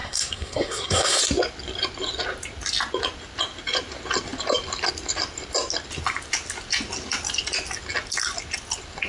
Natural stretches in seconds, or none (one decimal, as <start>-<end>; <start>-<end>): 1.2-9.1